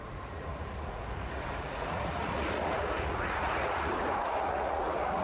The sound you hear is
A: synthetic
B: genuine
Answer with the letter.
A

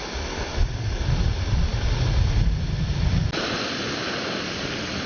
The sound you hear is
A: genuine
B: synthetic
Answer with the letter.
A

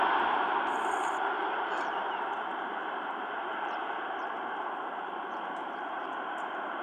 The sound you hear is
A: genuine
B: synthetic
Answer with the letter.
B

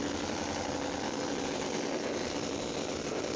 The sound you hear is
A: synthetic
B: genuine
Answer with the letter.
B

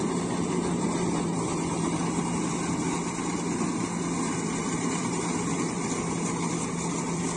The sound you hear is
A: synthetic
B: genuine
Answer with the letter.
B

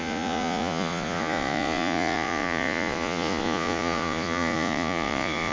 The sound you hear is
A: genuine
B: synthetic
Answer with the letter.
B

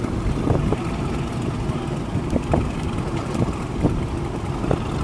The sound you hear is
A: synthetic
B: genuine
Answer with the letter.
B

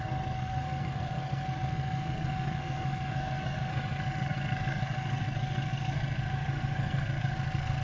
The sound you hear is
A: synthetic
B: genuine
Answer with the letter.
A